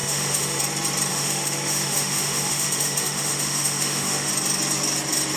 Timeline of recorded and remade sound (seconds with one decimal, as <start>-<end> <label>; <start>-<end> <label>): 0.0-0.6 remade; 0.6-1.1 recorded; 1.1-4.3 remade; 4.3-5.4 recorded